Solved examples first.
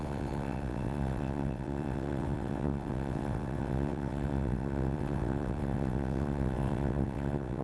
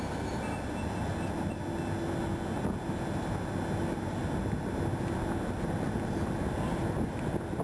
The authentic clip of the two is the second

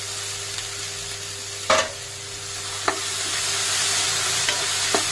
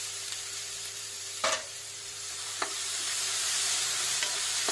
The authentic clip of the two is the first